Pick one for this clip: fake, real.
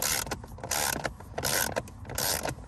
real